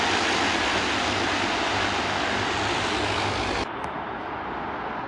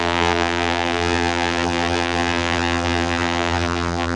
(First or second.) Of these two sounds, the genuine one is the first